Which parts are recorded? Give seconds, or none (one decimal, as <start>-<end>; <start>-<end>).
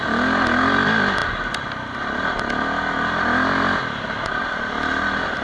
0.0-5.4